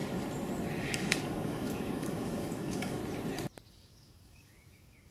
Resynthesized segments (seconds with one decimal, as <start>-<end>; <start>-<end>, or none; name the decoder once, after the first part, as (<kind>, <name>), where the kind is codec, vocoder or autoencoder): 0.8-3.0 (codec, DAC); 3.7-5.1